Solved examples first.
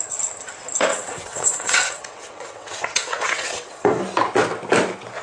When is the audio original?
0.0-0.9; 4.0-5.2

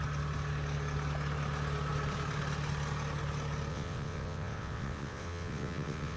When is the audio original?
0.0-3.7

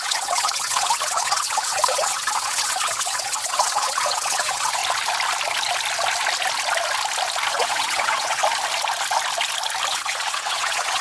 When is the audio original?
4.8-7.5; 8.4-9.9